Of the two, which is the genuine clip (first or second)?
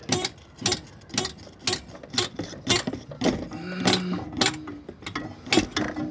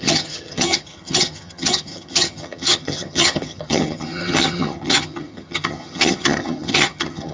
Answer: first